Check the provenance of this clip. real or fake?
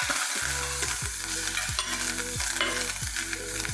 real